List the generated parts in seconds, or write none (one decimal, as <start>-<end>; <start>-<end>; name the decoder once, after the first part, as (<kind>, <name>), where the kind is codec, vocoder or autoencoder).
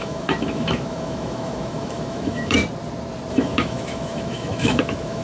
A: 0.0-2.6 (autoencoder, DAC-VAE); 3.3-5.2